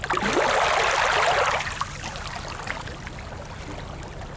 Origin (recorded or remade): recorded